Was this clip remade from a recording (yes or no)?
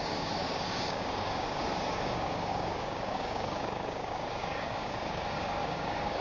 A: yes